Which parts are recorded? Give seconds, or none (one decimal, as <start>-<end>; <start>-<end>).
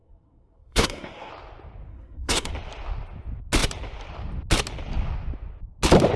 1.3-1.9; 2.5-6.2